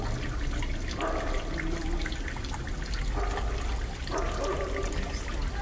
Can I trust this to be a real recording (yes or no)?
yes